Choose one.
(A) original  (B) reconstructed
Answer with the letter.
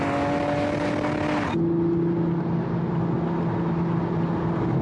A